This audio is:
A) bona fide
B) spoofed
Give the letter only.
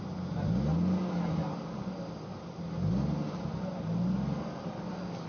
A